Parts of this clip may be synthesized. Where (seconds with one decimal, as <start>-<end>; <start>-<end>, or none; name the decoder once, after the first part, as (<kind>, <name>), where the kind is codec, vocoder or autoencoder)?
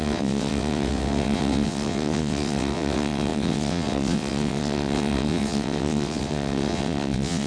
0.0-7.5 (vocoder, WaveNeXt)